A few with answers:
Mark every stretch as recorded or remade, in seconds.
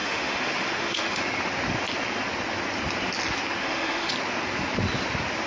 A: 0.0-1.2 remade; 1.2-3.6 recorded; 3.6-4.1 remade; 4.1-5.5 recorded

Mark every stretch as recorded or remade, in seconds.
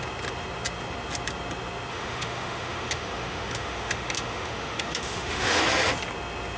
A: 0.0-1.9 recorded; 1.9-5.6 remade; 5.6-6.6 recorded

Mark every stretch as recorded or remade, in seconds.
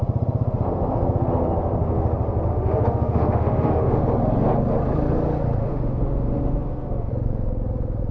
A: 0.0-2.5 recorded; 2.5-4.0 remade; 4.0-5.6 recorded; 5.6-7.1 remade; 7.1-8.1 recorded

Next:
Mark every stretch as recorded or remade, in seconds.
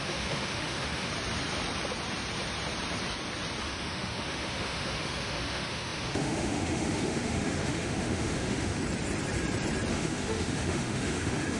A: 0.0-1.1 remade; 1.1-3.6 recorded; 3.6-8.8 remade; 8.8-9.9 recorded; 9.9-11.6 remade